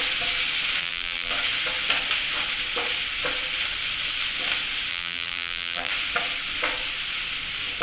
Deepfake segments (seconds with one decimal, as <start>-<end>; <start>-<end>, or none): 0.8-1.3; 4.9-5.9

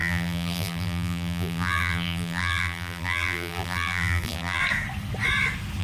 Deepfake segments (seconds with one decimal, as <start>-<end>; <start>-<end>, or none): 0.0-4.6